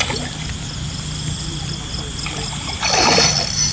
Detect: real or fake real